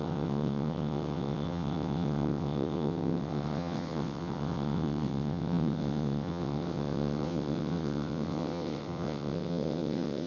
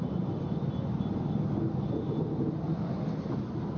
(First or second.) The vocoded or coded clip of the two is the first